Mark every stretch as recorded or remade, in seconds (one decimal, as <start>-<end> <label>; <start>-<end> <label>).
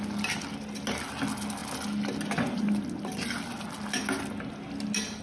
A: 0.0-5.2 recorded